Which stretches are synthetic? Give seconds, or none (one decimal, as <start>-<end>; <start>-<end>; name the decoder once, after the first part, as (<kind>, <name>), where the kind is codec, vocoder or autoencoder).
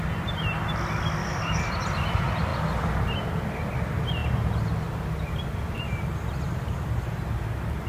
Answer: 1.2-1.7 (codec, DAC)